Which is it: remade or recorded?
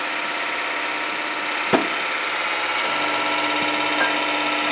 recorded